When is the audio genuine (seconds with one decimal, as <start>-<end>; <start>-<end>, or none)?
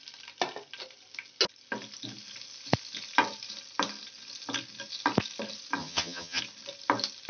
0.0-5.8; 6.4-7.3